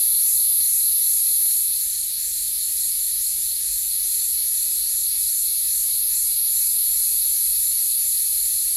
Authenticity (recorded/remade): recorded